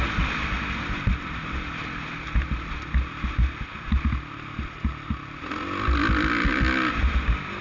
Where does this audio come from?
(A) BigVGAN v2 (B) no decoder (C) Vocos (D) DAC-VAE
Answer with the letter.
B